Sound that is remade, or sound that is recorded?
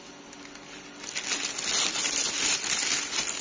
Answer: recorded